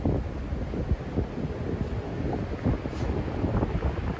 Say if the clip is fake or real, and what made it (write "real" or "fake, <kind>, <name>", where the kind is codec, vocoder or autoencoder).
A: real